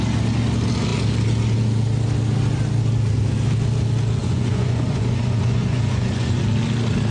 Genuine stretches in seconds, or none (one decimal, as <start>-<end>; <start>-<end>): 0.0-4.2; 6.4-7.1